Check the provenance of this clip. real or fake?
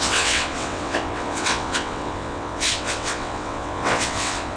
fake